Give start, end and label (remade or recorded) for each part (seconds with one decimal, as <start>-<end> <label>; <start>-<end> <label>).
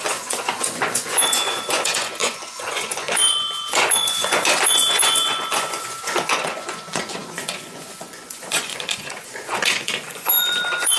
0.0-11.0 remade